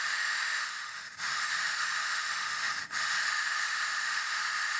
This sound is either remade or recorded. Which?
remade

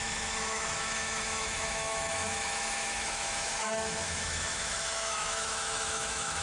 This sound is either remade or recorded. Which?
remade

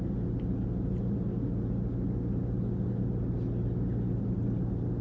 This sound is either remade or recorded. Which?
recorded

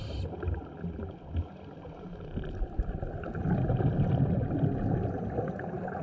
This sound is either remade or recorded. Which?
recorded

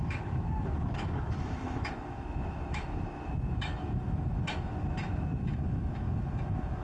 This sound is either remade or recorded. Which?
remade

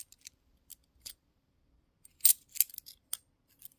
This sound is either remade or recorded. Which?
recorded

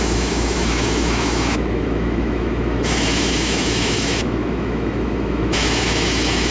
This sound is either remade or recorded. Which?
remade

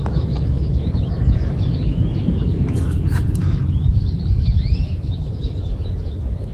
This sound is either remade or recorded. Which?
remade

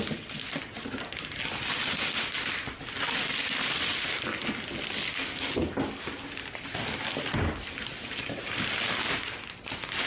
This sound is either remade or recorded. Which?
recorded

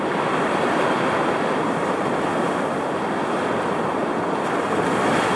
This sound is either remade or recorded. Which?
recorded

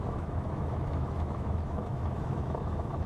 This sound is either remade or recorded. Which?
remade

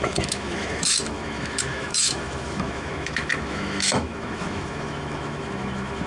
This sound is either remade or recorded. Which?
remade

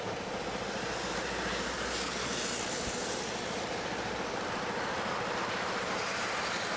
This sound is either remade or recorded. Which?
recorded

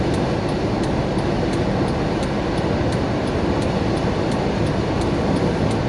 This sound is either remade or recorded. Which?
recorded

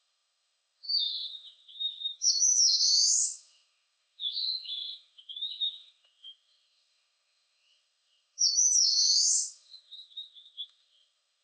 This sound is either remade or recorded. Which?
remade